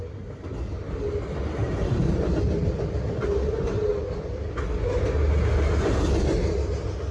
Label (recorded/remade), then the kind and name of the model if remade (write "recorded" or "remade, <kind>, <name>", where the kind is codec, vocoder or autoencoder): recorded